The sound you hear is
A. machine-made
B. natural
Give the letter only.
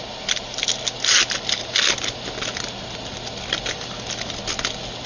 B